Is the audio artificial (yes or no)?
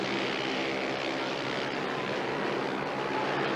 no